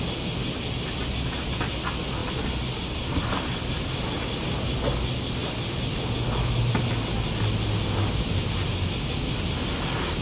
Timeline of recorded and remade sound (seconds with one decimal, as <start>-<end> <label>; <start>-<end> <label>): 0.0-2.2 recorded; 2.2-3.3 remade; 3.3-10.2 recorded